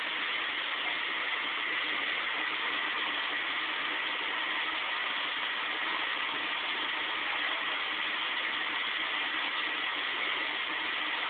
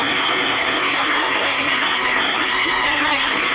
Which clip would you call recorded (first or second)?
first